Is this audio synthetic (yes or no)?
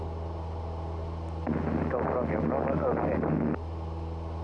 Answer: no